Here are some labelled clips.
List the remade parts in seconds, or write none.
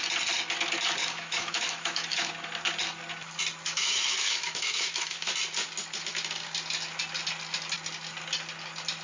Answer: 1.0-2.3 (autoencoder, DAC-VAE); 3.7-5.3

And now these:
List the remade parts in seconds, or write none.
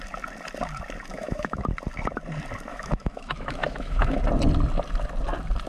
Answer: 1.1-1.6 (autoencoder, DAC-VAE); 2.7-4.2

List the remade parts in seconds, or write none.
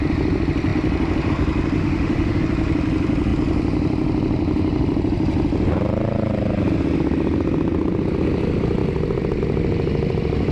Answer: 1.8-2.4 (autoencoder, DAC-VAE)